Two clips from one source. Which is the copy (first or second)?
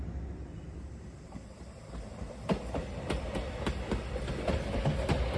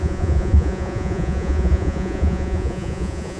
second